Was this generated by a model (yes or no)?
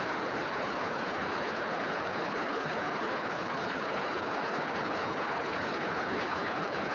yes